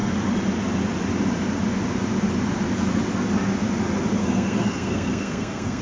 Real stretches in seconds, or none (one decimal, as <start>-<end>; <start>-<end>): 0.0-4.2